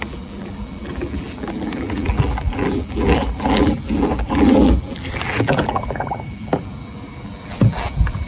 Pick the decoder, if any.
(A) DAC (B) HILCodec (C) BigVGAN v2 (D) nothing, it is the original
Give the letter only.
C